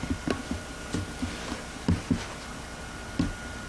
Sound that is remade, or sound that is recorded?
recorded